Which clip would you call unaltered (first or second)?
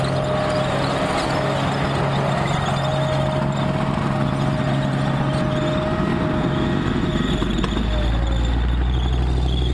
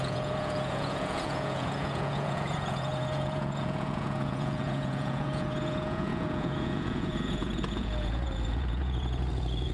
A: first